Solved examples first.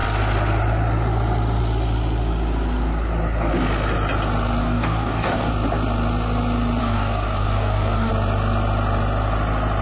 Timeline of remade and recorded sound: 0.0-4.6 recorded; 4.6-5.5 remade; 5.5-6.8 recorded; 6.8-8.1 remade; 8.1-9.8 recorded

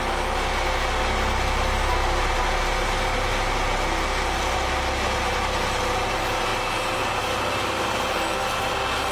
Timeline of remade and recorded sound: 0.0-9.1 recorded

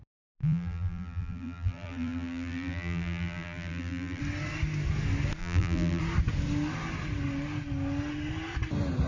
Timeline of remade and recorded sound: 0.0-0.4 recorded; 0.4-4.2 remade; 4.2-5.4 recorded; 5.4-6.0 remade; 6.0-9.1 recorded

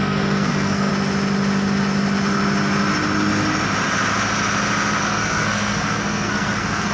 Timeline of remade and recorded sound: 0.0-0.9 remade; 0.9-5.0 recorded; 5.0-6.9 remade

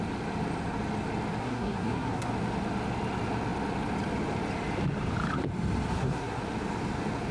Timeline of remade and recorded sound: 0.0-1.4 recorded; 1.4-2.3 remade; 2.3-5.9 recorded; 5.9-6.4 remade; 6.4-7.3 recorded

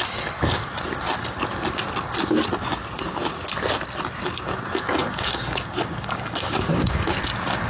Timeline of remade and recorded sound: 0.0-5.0 recorded; 5.0-7.2 remade; 7.2-7.7 recorded

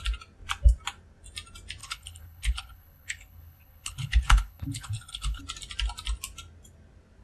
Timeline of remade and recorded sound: 0.0-1.8 recorded; 1.8-5.4 remade; 5.4-7.2 recorded

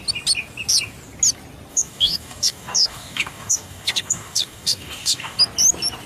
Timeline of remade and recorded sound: 0.0-1.7 recorded; 1.7-5.4 remade; 5.4-6.1 recorded